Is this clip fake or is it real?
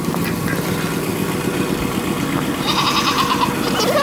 real